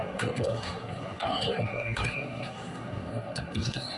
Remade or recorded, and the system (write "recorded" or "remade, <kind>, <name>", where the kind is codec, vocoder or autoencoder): remade, codec, SNAC